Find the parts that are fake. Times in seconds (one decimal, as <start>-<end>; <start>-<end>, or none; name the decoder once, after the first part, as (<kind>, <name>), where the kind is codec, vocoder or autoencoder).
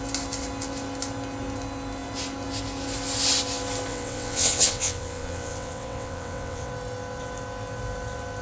3.9-6.7 (vocoder, WaveNeXt)